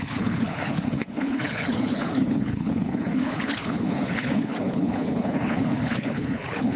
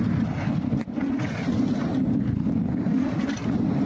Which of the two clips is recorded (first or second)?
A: second